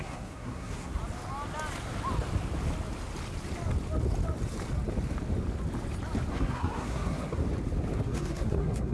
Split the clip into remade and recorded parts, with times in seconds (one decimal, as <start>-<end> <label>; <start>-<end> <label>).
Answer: 0.0-1.0 remade; 1.0-6.3 recorded; 6.3-7.4 remade; 7.4-8.0 recorded; 8.0-8.9 remade